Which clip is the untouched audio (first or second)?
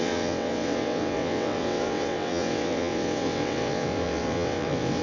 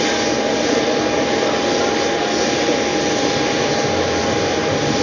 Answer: second